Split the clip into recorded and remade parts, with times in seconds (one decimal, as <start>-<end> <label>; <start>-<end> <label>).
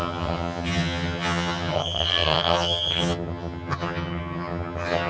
0.0-5.1 remade